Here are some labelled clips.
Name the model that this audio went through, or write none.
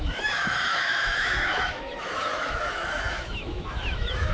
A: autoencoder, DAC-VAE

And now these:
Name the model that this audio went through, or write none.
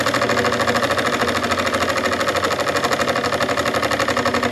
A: none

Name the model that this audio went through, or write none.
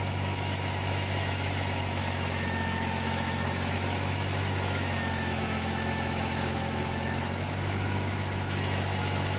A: autoencoder, DAC-VAE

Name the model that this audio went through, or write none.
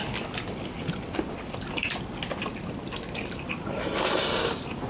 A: none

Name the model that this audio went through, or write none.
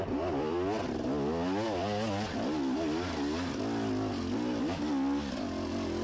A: none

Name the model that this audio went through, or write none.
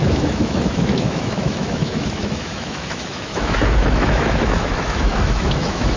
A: autoencoder, DAC-VAE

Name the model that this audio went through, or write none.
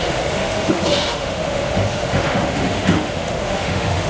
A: autoencoder, DAC-VAE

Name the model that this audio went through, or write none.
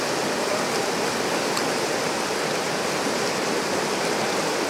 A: none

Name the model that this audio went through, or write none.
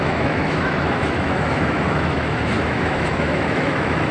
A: autoencoder, DAC-VAE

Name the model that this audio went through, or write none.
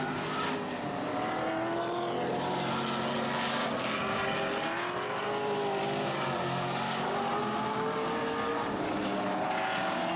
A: none